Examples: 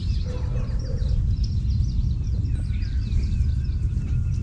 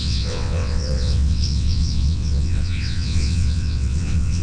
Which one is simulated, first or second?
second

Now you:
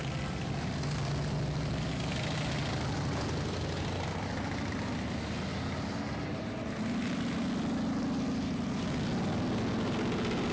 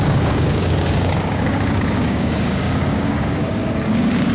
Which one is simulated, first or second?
second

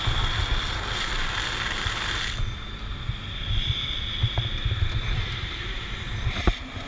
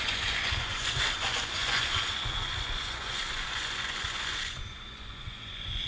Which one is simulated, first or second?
second